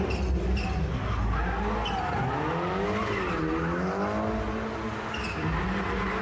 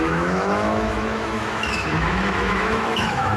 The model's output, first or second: second